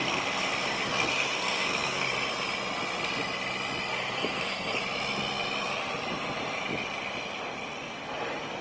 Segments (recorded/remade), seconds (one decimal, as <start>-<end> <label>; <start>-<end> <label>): 0.0-0.9 recorded; 0.9-2.1 remade; 2.1-3.9 recorded; 3.9-4.8 remade; 4.8-8.6 recorded